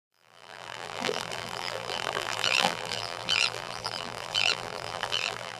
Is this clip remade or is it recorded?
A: remade